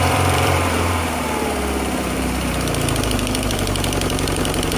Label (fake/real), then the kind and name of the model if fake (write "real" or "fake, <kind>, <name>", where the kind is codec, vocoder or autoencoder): fake, vocoder, BigVGAN v2